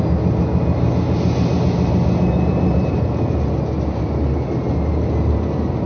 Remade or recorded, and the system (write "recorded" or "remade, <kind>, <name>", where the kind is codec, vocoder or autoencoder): recorded